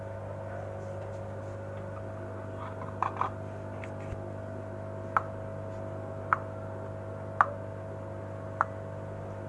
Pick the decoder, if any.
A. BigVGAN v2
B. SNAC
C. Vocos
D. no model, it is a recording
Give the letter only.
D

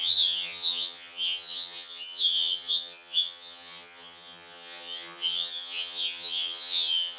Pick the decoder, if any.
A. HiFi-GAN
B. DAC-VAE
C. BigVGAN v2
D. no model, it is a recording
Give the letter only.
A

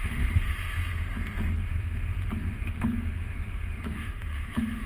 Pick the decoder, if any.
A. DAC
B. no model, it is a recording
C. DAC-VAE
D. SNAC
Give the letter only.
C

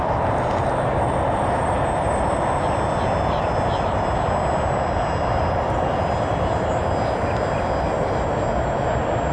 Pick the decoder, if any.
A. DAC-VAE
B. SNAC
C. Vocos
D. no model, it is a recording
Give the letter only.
D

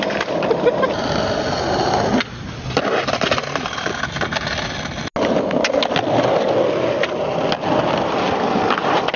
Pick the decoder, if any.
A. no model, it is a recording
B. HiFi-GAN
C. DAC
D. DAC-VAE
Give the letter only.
A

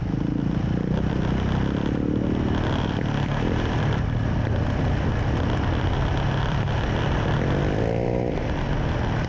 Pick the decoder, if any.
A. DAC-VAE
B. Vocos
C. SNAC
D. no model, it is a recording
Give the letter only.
D